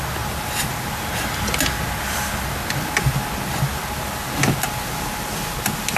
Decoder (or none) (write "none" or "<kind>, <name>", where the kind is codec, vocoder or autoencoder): none